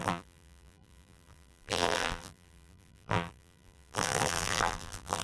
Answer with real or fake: fake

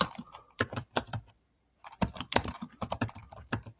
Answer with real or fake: fake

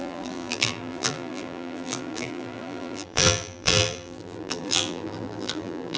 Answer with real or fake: fake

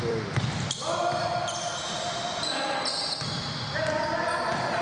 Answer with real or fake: fake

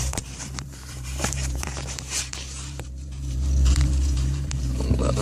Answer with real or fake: fake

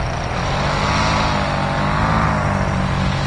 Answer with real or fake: real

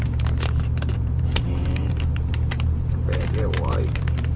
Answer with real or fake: fake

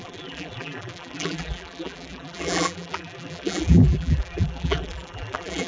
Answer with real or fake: fake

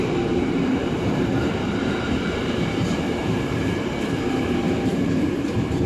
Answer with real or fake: fake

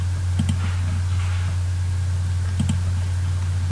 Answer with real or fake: real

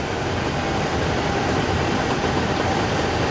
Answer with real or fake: fake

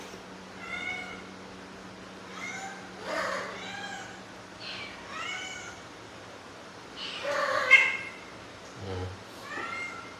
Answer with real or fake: real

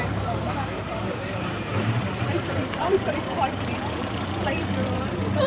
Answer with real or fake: fake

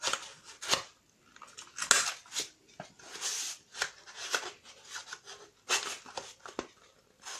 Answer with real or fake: real